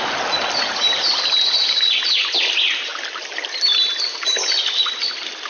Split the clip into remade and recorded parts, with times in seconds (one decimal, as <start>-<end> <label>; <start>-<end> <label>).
0.0-5.5 recorded